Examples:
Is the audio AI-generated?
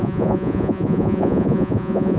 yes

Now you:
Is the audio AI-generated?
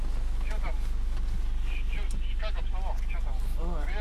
no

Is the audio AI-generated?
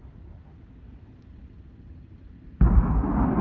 no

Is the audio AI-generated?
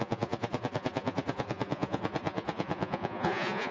yes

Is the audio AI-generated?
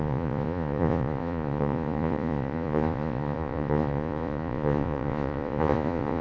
yes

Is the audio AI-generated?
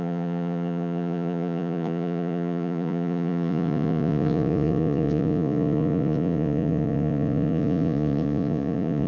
yes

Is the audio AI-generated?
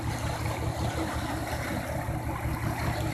no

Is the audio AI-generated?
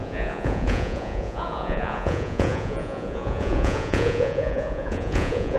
yes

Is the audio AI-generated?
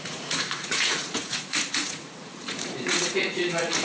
yes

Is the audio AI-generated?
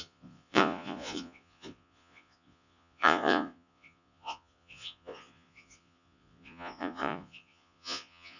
yes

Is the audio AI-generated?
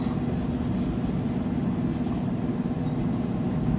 no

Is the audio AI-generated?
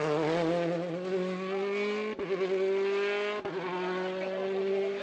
no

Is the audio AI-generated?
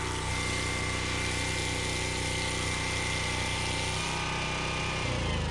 no